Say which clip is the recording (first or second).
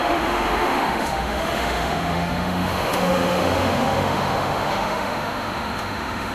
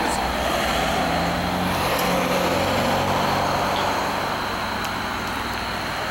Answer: second